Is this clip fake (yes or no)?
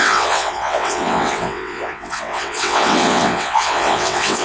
yes